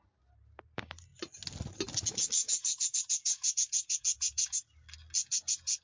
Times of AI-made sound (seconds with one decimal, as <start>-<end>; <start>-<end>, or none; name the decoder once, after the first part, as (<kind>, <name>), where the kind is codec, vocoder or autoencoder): 2.4-4.7 (vocoder, Vocos); 5.2-5.8